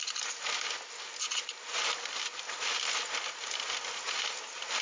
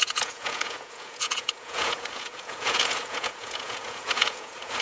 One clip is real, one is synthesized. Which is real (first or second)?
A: first